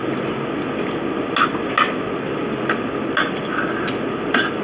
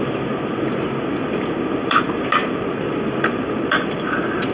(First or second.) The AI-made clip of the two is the second